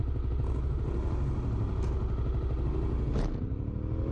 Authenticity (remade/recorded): recorded